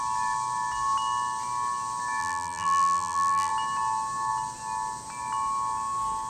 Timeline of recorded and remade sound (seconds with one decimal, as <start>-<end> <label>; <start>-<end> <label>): 0.0-2.2 recorded; 2.2-3.5 remade; 3.5-6.3 recorded